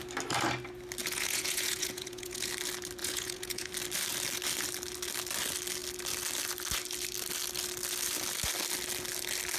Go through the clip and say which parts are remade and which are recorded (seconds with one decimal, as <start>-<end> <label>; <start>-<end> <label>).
0.0-1.0 recorded; 1.0-2.5 remade; 2.5-3.0 recorded; 3.0-3.7 remade; 3.7-9.6 recorded